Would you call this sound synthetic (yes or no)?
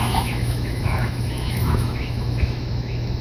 yes